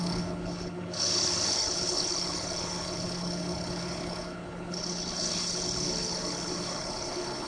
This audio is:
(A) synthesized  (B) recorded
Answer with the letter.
A